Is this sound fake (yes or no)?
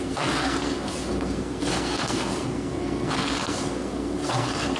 yes